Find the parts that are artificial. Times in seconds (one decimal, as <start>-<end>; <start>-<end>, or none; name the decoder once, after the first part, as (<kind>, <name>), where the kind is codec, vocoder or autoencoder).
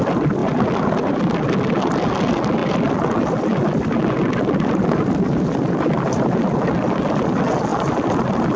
0.4-1.1 (vocoder, BigVGAN v2); 7.7-8.6